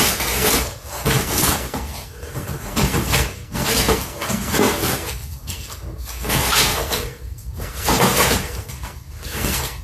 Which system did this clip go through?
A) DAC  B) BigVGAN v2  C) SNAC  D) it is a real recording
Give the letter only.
C